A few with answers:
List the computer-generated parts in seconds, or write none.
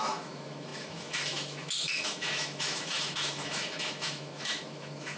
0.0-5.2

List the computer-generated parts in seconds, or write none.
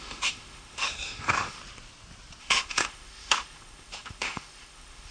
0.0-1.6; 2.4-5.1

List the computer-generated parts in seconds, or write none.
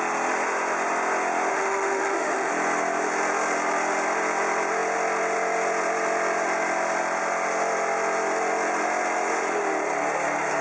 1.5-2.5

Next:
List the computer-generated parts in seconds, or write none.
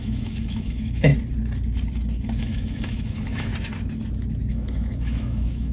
0.0-1.1; 2.4-3.5; 4.5-5.7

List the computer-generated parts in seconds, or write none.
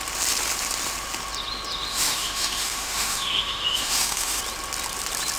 1.9-4.4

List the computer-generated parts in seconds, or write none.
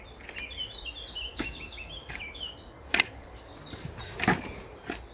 1.3-2.4